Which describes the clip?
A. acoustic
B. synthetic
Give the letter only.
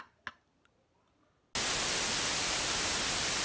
A